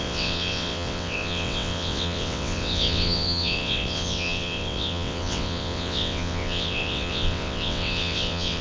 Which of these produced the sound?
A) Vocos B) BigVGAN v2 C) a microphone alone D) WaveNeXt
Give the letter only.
D